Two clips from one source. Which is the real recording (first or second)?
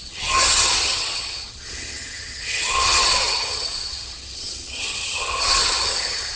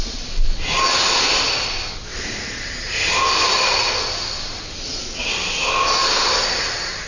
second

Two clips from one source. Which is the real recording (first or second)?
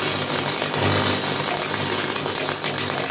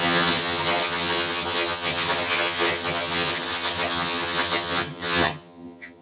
first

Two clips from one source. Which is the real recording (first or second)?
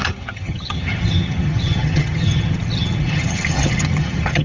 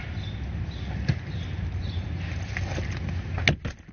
second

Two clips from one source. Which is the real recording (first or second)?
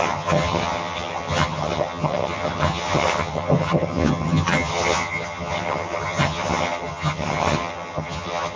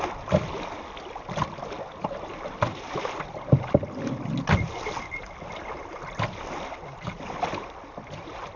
second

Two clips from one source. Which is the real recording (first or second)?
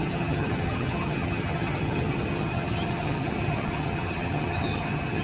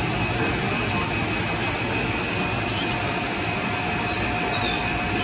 second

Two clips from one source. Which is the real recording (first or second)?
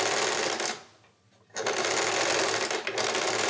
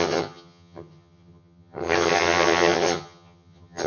first